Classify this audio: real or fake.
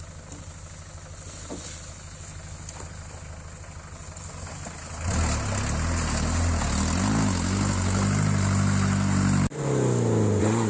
real